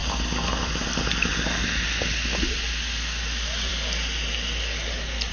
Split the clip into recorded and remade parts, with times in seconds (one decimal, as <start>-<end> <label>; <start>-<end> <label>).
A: 0.0-5.3 recorded